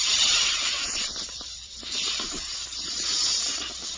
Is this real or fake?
real